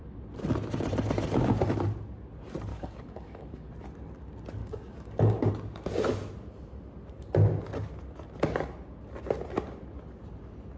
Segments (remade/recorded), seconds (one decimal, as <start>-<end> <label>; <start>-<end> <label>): 0.0-2.7 recorded; 2.7-3.7 remade; 3.7-4.6 recorded; 4.6-5.5 remade; 5.5-10.8 recorded